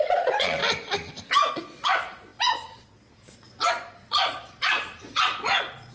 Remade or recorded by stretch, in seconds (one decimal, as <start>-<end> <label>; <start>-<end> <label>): 0.0-0.6 remade; 0.6-1.5 recorded; 1.5-5.9 remade